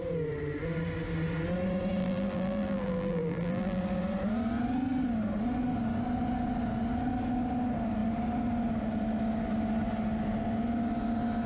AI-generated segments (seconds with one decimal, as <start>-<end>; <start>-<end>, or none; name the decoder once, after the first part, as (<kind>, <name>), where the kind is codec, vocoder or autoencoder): 2.0-3.8 (vocoder, BigVGAN v2)